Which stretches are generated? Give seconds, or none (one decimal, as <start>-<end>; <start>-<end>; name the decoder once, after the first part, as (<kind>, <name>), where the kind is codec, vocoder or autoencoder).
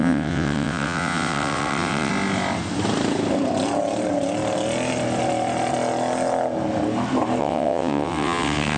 0.0-2.1 (vocoder, WaveNeXt); 7.4-8.8